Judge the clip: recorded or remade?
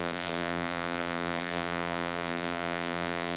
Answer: remade